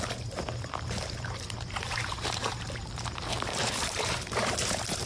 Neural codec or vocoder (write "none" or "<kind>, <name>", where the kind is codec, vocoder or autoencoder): vocoder, BigVGAN v2